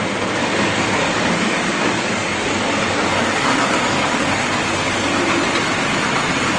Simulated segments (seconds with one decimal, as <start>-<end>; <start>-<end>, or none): 0.4-4.4